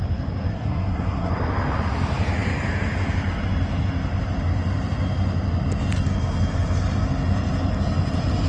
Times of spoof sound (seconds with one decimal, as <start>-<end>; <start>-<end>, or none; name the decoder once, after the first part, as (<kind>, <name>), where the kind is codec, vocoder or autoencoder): 0.5-1.3 (codec, SNAC)